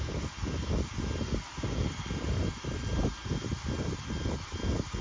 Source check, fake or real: real